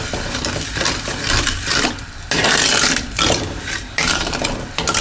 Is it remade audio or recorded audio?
remade